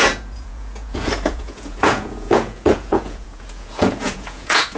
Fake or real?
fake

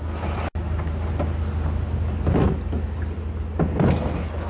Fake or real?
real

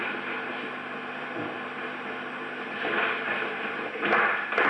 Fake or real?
real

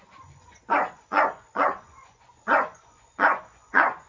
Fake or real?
fake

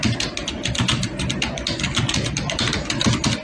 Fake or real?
real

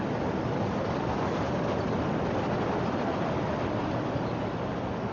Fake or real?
real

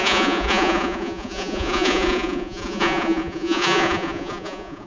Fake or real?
fake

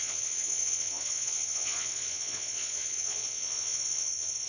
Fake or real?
fake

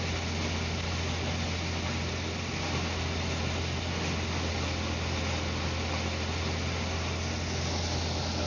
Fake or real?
real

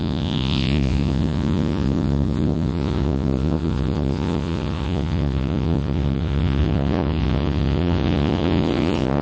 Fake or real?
fake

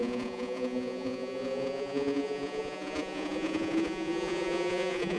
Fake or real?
fake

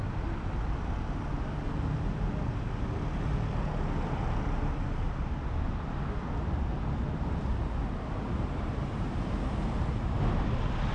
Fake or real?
real